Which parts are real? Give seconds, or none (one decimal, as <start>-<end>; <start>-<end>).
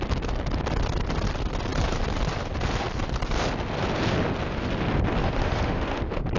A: 0.0-5.2; 6.0-6.4